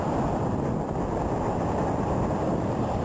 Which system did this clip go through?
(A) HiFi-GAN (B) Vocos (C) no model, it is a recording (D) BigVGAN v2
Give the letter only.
C